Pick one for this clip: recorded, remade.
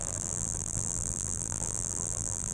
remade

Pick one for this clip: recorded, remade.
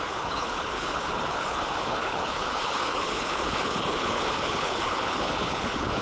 remade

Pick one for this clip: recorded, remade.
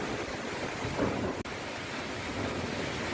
recorded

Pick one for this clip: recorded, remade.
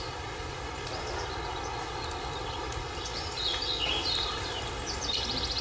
recorded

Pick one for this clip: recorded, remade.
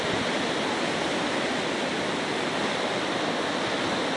recorded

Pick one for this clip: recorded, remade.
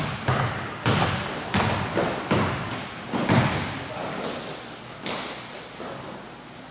recorded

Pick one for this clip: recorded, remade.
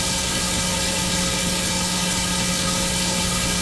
remade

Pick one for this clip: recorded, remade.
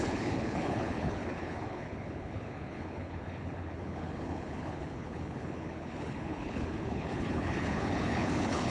remade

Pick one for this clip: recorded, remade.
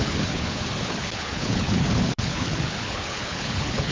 remade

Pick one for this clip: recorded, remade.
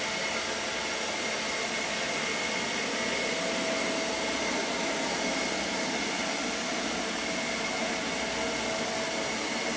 recorded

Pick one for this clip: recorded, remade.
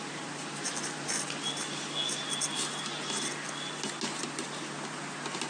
recorded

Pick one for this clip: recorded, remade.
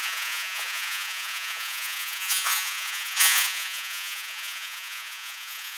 remade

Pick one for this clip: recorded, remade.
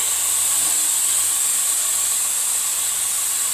recorded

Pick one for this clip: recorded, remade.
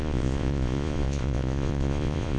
remade